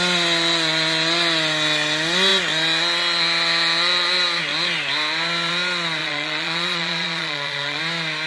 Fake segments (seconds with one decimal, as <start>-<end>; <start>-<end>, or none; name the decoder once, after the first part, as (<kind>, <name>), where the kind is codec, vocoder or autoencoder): 6.0-7.8 (vocoder, Vocos)